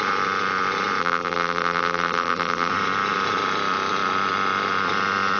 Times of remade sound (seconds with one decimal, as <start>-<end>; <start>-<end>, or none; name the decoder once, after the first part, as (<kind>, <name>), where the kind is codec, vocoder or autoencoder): 1.0-2.7 (vocoder, BigVGAN v2)